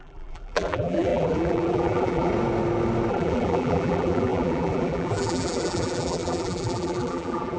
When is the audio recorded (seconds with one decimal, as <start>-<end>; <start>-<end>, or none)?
2.3-3.1